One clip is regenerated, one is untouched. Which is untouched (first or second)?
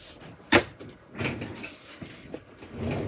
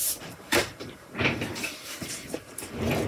first